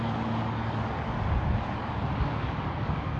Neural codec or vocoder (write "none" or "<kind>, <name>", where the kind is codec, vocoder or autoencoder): codec, DAC